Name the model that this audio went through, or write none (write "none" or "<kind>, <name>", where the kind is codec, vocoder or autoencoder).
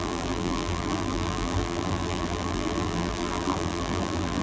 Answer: vocoder, BigVGAN v2